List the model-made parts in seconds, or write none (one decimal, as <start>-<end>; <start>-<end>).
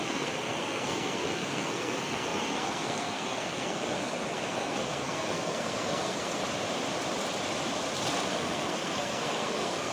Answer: 0.0-6.4; 8.3-9.9